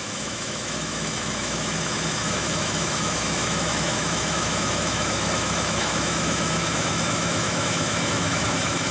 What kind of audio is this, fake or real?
fake